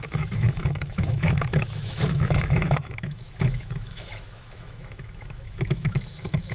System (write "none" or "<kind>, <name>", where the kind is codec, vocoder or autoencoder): autoencoder, DAC-VAE